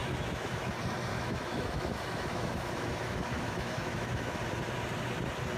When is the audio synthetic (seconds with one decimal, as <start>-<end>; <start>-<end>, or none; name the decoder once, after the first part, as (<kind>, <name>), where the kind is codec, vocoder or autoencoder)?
0.0-0.7 (autoencoder, DAC-VAE); 1.1-4.4